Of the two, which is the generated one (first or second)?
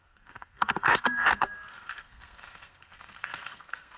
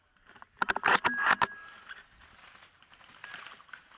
first